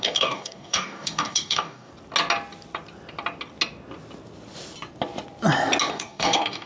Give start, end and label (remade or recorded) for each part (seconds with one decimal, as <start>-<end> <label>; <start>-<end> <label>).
0.0-1.9 remade; 1.9-5.9 recorded; 5.9-6.7 remade